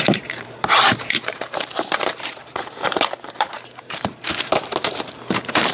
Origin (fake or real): fake